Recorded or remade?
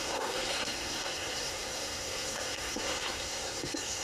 remade